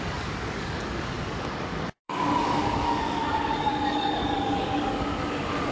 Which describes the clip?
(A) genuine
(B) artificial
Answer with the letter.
B